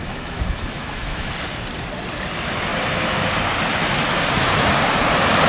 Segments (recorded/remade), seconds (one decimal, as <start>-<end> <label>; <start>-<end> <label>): 0.0-1.3 remade; 1.3-5.5 recorded